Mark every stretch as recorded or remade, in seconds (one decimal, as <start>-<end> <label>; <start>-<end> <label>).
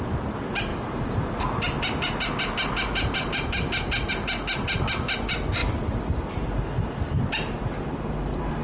0.0-8.6 recorded